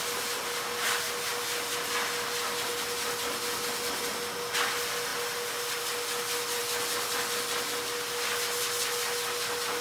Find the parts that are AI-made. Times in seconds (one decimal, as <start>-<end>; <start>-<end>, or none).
none